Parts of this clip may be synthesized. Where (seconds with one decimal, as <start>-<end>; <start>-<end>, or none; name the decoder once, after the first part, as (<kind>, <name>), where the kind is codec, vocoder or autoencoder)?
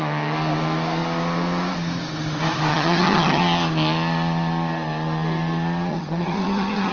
2.7-3.4 (vocoder, HiFi-GAN); 5.9-6.9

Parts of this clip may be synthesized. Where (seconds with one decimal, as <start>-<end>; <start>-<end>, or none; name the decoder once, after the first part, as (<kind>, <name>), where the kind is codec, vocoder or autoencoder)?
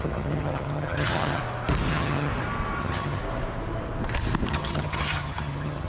0.0-1.4 (vocoder, HiFi-GAN); 1.9-2.3; 2.8-3.2; 4.5-5.9